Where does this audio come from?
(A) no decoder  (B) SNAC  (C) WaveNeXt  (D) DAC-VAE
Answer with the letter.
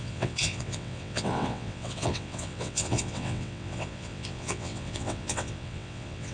C